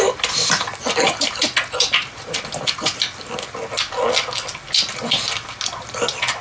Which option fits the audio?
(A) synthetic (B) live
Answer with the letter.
B